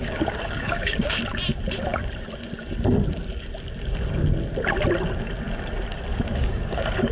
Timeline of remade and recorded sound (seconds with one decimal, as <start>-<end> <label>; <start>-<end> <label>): 0.0-1.2 remade; 1.2-6.1 recorded; 6.1-7.1 remade